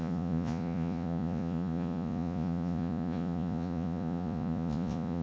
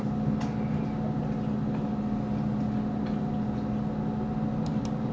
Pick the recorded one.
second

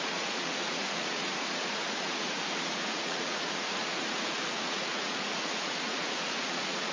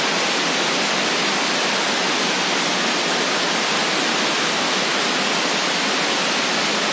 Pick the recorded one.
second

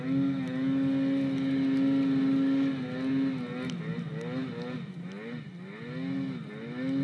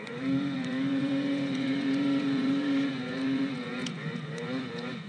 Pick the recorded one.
first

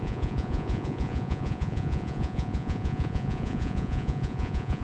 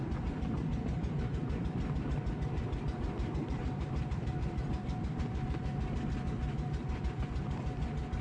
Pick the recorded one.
second